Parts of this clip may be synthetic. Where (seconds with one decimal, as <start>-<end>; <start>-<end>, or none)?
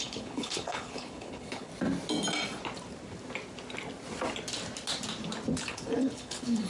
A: 0.0-1.7; 5.7-6.7